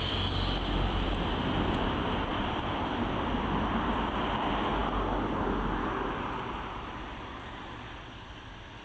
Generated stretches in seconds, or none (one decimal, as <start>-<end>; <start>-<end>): 0.0-4.8; 6.5-8.8